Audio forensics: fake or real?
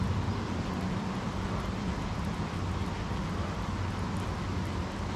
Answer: real